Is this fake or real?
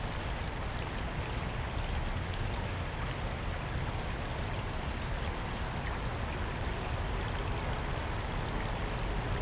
real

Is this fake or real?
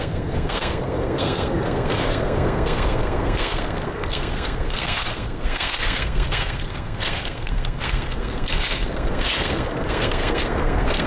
fake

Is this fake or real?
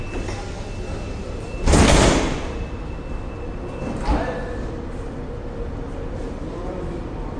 fake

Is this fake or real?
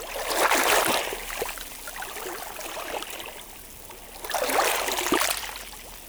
real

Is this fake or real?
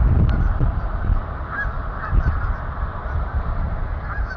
real